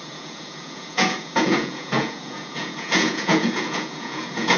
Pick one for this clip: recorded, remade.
remade